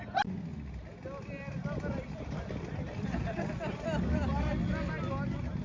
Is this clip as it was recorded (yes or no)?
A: yes